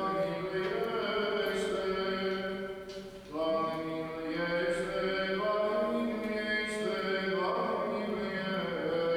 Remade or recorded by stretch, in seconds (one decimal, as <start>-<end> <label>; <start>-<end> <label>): 0.0-0.7 recorded; 0.7-1.2 remade; 1.2-9.2 recorded